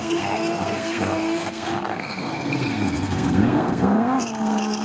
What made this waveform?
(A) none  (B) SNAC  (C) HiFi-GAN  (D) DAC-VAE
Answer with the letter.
B